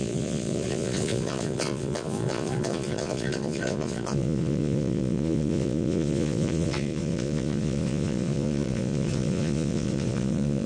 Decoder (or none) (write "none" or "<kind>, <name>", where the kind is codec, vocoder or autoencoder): vocoder, Vocos